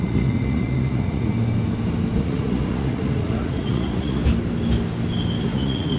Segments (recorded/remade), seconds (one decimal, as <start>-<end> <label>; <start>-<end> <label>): 0.0-1.3 remade; 1.3-2.2 recorded; 2.2-4.2 remade; 4.2-5.4 recorded; 5.4-6.0 remade